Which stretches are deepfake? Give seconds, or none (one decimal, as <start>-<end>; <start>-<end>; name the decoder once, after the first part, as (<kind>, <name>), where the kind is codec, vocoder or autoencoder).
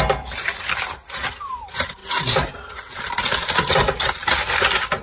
none